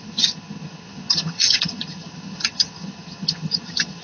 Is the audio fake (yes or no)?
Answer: yes